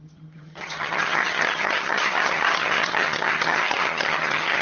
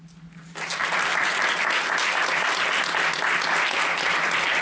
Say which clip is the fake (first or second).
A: first